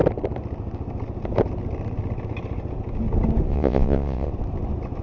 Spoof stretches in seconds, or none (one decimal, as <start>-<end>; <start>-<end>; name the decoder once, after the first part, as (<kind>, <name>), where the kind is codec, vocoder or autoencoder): 3.5-4.3 (vocoder, WaveNeXt)